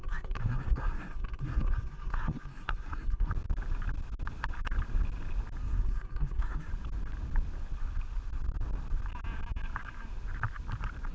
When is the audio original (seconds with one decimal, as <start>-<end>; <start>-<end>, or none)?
3.3-5.6; 6.7-11.1

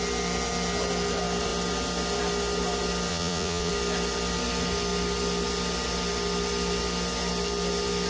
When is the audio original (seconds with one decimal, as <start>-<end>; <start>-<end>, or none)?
0.0-3.1; 3.7-8.1